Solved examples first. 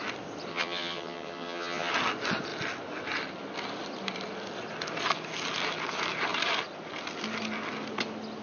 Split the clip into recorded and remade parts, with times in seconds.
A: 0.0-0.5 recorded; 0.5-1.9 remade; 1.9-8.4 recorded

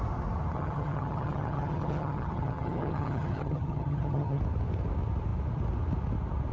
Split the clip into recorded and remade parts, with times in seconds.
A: 0.0-0.5 recorded; 0.5-4.4 remade; 4.4-6.5 recorded

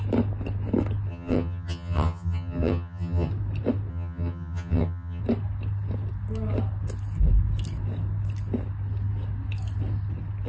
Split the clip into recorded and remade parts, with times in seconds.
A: 0.0-1.1 recorded; 1.1-3.3 remade; 3.3-3.9 recorded; 3.9-5.2 remade; 5.2-10.5 recorded